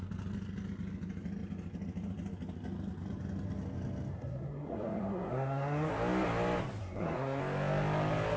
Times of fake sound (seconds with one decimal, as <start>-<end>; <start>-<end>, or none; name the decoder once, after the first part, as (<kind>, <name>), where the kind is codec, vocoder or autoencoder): 4.1-5.9 (codec, SNAC); 6.8-7.4